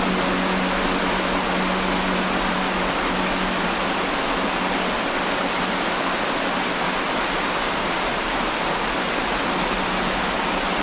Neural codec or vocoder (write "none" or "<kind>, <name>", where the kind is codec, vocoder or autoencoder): none